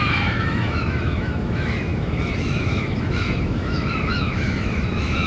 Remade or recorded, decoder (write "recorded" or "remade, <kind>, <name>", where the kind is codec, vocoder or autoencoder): remade, autoencoder, DAC-VAE